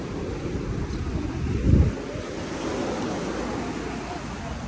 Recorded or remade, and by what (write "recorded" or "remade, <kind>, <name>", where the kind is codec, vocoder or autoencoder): recorded